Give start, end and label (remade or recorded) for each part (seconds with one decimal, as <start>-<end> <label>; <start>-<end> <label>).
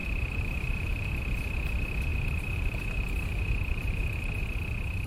0.0-1.2 remade; 1.2-2.1 recorded; 2.1-4.4 remade; 4.4-5.1 recorded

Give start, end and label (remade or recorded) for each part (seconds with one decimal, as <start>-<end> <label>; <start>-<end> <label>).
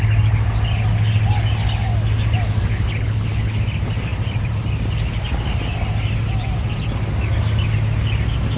0.0-2.7 recorded; 2.7-3.6 remade; 3.6-8.6 recorded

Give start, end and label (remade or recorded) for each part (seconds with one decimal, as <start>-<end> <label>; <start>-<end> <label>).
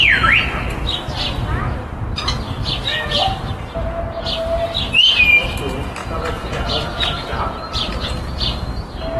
0.0-2.9 recorded; 2.9-3.4 remade; 3.4-6.0 recorded; 6.0-7.4 remade; 7.4-9.2 recorded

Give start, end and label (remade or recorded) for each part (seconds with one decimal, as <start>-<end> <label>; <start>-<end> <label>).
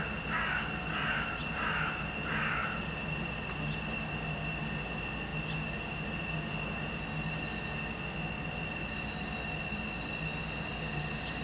0.0-11.4 recorded